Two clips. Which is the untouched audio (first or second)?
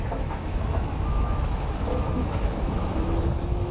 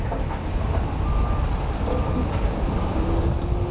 second